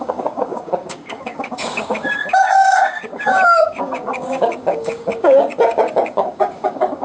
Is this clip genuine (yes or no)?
no